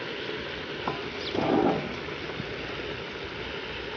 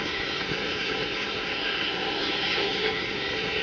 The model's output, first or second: second